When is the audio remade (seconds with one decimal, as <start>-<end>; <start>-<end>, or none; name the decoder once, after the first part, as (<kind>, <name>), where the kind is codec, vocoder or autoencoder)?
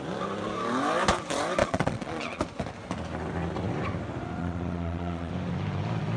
1.6-2.4 (vocoder, Vocos); 4.4-5.3